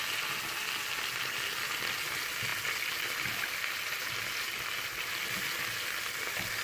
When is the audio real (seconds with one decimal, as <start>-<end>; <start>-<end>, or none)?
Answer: 0.0-6.6